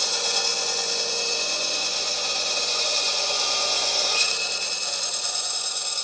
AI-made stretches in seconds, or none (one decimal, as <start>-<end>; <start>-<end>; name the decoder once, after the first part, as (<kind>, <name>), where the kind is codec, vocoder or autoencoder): 0.0-4.3 (vocoder, Vocos); 5.0-6.0